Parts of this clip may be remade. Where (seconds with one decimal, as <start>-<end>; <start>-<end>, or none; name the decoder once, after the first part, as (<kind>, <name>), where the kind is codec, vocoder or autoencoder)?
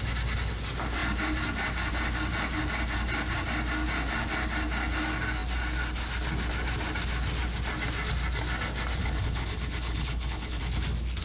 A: 9.0-10.6 (codec, HILCodec)